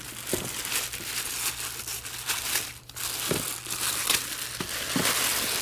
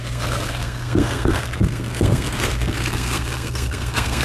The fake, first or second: second